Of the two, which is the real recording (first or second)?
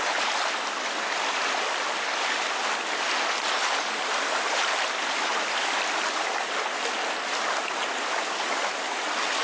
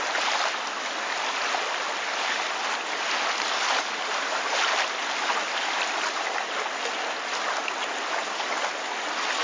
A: second